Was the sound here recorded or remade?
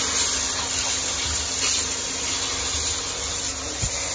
recorded